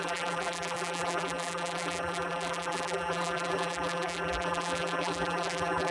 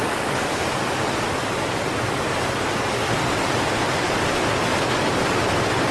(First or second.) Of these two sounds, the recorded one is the second